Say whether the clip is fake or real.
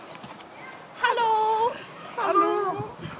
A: real